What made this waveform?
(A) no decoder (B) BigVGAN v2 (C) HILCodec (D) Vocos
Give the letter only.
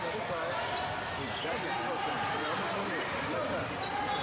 A